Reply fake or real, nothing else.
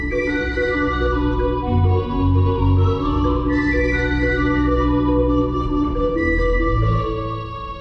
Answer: real